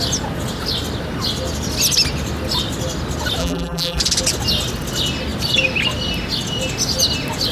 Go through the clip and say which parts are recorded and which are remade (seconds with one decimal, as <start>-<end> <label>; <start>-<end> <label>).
0.0-3.4 recorded; 3.4-4.0 remade; 4.0-7.5 recorded